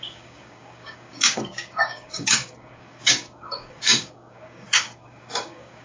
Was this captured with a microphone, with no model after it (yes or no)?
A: no